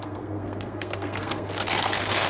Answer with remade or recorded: remade